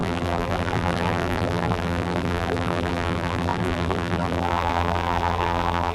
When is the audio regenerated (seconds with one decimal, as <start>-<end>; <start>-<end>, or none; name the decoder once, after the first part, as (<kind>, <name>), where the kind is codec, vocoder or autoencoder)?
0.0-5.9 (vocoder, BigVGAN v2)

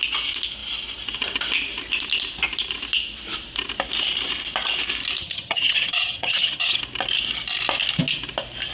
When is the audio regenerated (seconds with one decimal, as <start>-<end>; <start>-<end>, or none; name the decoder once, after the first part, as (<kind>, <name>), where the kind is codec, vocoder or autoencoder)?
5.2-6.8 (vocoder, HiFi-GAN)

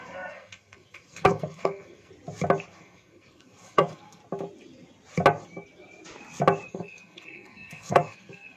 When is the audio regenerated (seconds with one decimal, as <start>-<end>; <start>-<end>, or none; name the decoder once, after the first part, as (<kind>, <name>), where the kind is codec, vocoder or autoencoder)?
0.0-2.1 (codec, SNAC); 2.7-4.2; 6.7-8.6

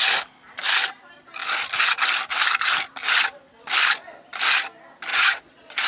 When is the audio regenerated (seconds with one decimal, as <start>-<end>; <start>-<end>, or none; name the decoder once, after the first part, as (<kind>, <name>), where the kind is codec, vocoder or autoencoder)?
5.1-5.9 (vocoder, Vocos)

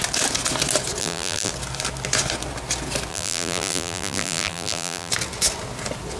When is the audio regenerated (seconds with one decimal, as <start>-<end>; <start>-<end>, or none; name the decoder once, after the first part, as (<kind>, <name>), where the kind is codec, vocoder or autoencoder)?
1.0-1.5 (vocoder, BigVGAN v2); 3.1-5.1

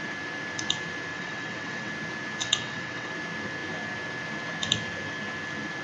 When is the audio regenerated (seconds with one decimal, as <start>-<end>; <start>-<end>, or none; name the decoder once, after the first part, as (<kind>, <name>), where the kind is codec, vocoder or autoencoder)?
1.1-1.9 (vocoder, WaveNeXt); 2.4-3.1

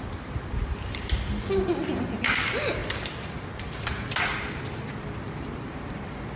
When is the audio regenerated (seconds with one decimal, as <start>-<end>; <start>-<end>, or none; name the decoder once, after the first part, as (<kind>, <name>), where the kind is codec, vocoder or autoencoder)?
0.0-6.4 (vocoder, BigVGAN v2)